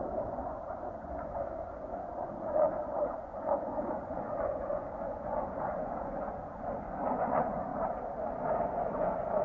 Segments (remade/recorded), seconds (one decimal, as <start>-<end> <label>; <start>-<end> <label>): 0.0-7.7 remade; 7.7-8.6 recorded; 8.6-9.4 remade